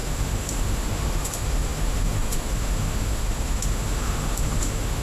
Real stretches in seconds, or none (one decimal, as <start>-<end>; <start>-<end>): none